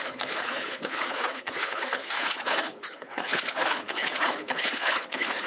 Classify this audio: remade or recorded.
remade